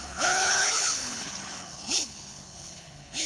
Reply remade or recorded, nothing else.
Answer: remade